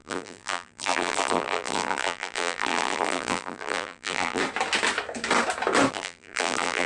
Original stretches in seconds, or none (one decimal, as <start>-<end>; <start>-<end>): 4.4-5.9

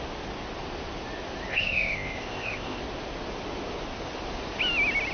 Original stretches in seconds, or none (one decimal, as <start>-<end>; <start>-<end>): 0.0-1.5; 2.8-5.1